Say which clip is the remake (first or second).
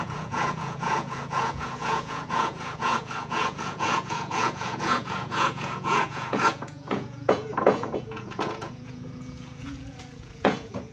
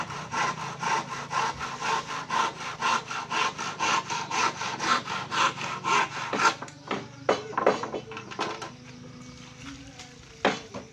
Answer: first